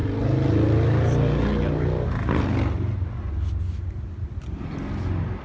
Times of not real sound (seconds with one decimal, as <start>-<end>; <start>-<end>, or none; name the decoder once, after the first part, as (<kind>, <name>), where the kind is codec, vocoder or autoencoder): none